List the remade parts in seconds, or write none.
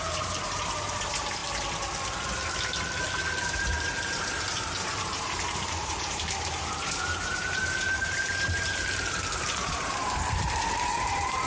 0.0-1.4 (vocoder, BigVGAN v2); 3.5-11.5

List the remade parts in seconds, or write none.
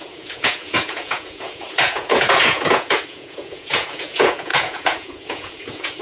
0.0-6.0 (vocoder, Vocos)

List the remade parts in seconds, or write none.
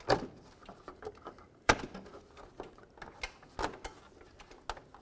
0.9-1.7 (vocoder, BigVGAN v2)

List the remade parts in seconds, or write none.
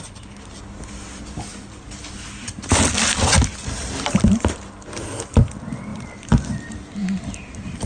none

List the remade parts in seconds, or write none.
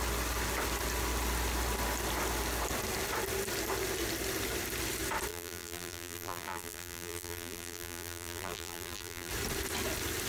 5.3-9.3 (vocoder, BigVGAN v2)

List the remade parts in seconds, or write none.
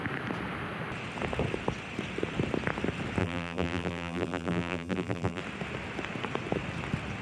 3.2-5.4 (vocoder, BigVGAN v2)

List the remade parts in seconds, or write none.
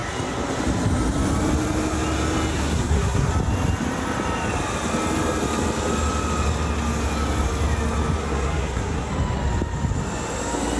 2.5-3.3 (codec, SNAC); 8.2-9.1